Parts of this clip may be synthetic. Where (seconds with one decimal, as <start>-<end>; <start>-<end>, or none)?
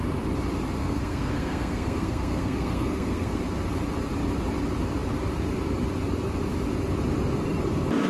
0.8-3.4